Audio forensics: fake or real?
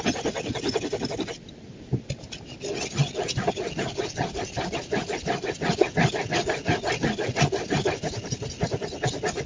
real